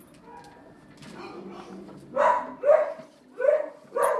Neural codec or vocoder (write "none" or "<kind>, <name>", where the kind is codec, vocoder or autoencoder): none